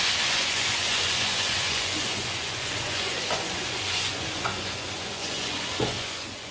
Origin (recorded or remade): remade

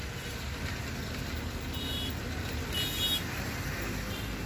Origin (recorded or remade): recorded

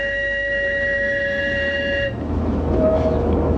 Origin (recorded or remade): remade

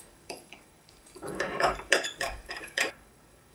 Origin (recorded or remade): remade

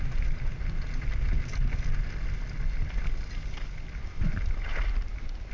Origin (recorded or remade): recorded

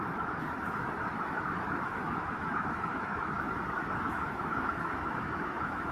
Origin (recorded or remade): remade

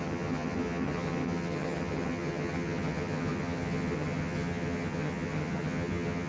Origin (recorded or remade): remade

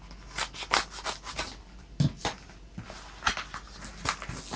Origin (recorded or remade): recorded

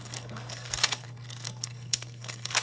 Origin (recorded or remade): remade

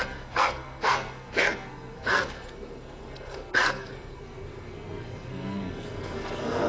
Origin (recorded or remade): remade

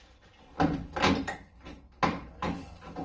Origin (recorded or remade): recorded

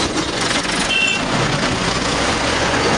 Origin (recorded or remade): remade